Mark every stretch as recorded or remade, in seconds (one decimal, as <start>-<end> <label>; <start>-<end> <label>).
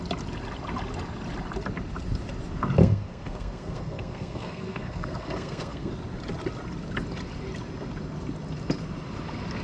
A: 0.0-2.8 recorded; 2.8-5.9 remade; 5.9-9.6 recorded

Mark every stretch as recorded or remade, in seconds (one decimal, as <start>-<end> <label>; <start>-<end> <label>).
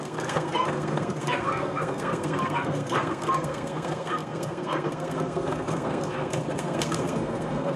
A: 0.0-7.8 remade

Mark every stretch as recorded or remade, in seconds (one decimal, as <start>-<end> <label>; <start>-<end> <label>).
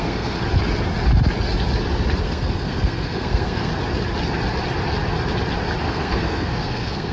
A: 0.0-0.4 remade; 0.4-2.2 recorded; 2.2-3.7 remade; 3.7-5.8 recorded; 5.8-7.1 remade